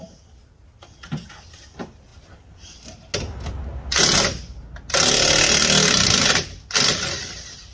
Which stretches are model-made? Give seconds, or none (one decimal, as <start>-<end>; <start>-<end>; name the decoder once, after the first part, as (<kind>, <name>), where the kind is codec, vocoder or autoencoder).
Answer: none